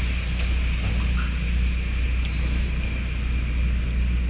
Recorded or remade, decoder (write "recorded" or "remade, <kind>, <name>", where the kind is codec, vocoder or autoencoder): recorded